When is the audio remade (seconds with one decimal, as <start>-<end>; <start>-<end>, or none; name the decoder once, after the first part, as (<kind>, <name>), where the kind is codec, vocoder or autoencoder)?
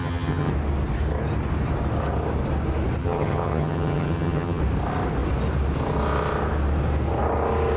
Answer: 0.0-0.5 (vocoder, HiFi-GAN); 3.0-4.6